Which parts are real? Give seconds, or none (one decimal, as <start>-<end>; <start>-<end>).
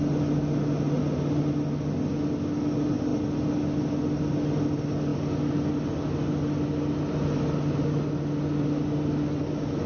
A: 0.0-9.9